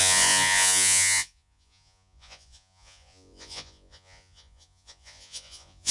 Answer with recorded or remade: remade